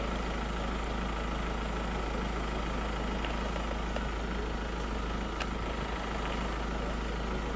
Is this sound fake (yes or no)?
no